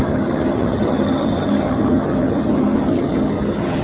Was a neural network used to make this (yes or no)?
yes